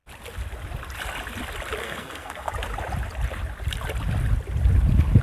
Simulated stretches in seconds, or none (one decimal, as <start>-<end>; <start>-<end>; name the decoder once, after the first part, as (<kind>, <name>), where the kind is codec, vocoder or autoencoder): 1.8-2.5 (codec, SNAC)